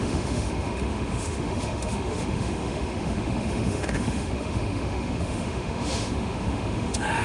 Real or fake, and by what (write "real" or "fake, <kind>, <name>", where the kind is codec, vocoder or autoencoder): fake, autoencoder, DAC-VAE